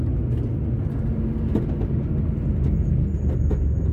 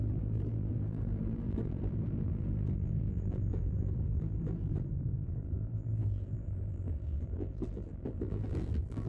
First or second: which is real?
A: first